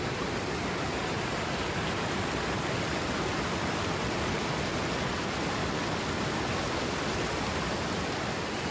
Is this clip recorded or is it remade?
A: recorded